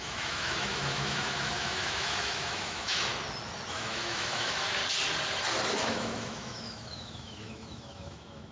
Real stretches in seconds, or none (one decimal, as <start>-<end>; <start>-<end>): 3.1-3.7; 4.8-5.8